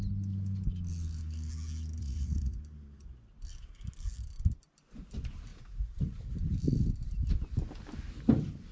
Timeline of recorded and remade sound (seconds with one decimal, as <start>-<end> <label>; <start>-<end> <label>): 0.0-2.0 recorded; 2.0-2.6 remade; 2.6-5.5 recorded; 5.5-6.2 remade; 6.2-8.7 recorded